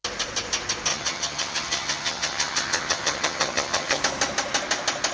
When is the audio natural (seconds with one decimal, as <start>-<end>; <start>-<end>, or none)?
0.0-0.9; 4.0-5.1